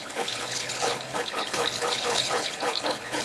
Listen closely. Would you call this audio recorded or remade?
remade